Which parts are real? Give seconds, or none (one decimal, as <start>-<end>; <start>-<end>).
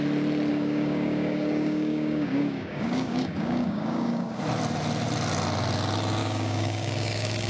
0.0-0.5; 4.4-6.2